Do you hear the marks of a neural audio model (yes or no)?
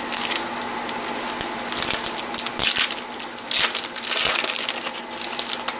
no